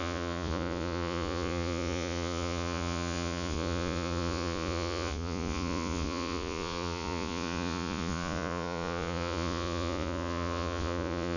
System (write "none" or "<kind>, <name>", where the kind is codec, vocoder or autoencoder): vocoder, Vocos